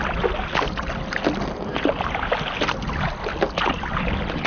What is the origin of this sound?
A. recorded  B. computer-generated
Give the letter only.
A